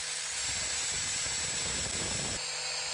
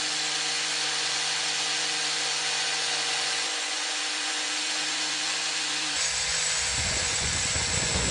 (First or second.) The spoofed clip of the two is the second